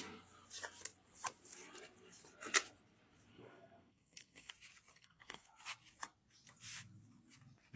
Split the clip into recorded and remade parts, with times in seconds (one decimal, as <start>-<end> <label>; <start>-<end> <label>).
0.0-3.3 recorded; 3.3-4.5 remade; 4.5-4.9 recorded; 4.9-5.5 remade; 5.5-7.8 recorded